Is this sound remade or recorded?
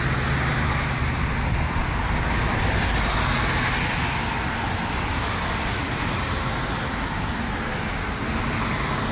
recorded